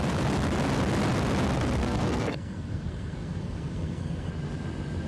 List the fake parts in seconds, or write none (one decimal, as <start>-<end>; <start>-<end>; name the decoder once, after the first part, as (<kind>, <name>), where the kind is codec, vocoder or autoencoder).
1.8-4.3 (codec, SNAC)